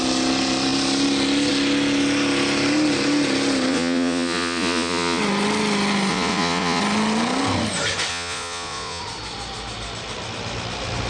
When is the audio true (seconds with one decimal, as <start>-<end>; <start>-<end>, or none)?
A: 0.0-3.7; 5.2-6.1; 6.8-8.1; 9.0-11.1